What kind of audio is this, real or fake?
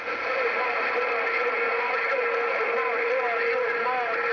real